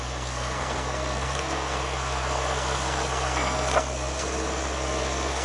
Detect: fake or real fake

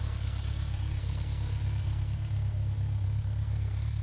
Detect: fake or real fake